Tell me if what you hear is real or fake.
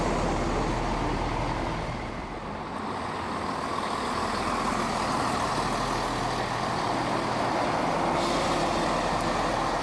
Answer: real